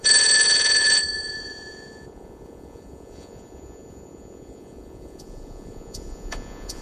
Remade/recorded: remade